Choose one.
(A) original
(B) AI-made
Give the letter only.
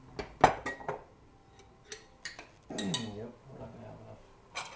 A